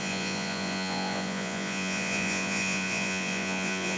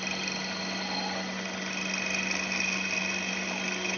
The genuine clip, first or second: second